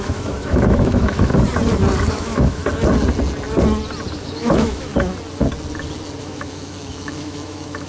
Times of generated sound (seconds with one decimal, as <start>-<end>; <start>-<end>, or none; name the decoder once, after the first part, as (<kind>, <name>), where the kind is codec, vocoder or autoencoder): 0.0-1.3 (autoencoder, DAC-VAE); 2.1-2.6; 4.1-4.9; 6.2-7.9